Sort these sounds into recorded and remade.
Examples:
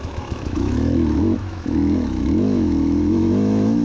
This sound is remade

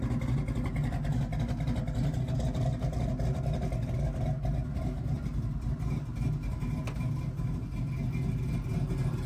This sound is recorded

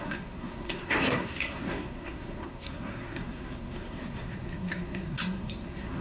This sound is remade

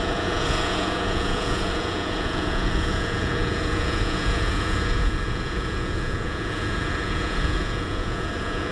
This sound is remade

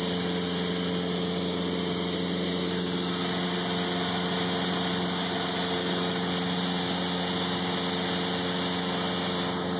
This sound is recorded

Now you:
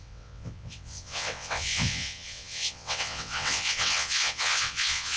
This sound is remade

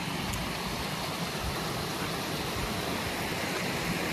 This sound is recorded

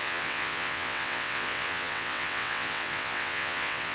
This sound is remade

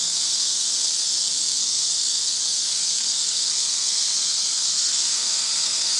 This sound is remade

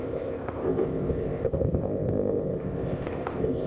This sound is remade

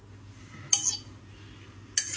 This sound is recorded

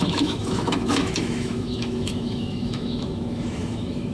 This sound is remade